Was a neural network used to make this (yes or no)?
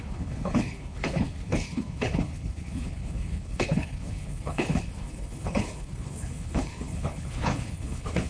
yes